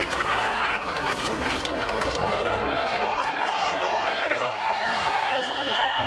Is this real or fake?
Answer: fake